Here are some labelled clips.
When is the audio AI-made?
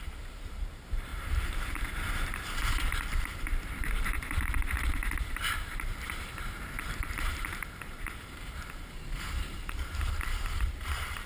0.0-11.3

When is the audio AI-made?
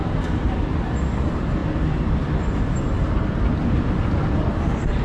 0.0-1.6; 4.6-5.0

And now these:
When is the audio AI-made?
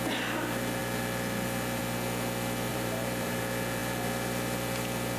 2.7-3.4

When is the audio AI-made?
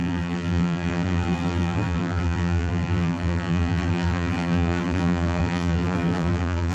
0.0-6.7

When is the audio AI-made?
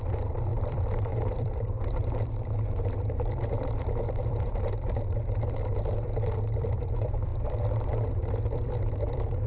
0.0-7.3; 8.0-9.5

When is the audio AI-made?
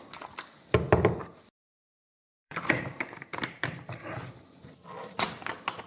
2.0-3.8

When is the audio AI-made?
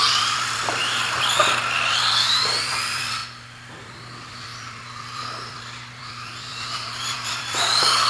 0.0-0.8; 1.9-8.1